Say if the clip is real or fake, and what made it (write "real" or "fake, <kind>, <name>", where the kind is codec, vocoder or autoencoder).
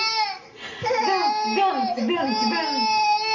real